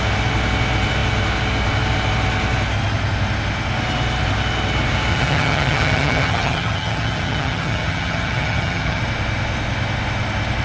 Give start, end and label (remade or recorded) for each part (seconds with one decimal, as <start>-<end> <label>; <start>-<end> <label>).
0.0-5.1 recorded; 5.1-9.0 remade; 9.0-10.6 recorded